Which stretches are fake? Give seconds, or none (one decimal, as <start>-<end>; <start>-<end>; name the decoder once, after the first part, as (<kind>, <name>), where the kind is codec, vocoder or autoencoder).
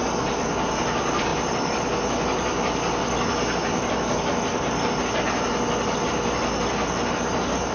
none